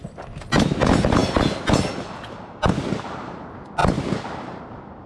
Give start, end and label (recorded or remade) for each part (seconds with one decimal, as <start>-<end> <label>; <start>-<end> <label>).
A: 0.0-5.1 recorded